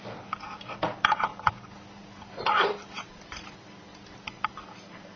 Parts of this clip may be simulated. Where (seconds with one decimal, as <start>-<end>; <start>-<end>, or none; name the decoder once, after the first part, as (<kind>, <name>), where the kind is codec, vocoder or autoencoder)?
0.0-1.3 (vocoder, BigVGAN v2); 2.3-3.9